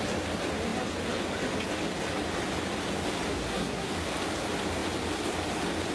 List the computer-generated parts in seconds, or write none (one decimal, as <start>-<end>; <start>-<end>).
3.3-3.9